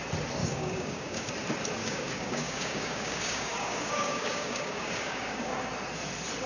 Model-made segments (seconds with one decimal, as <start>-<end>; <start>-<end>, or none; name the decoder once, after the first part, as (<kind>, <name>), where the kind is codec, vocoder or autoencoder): 0.4-1.3 (codec, DAC); 1.8-5.7